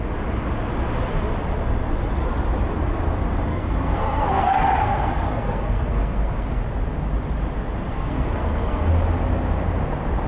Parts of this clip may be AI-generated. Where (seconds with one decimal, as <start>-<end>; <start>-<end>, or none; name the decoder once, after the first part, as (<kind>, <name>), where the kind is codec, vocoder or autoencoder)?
3.5-6.6 (codec, SNAC); 7.9-8.9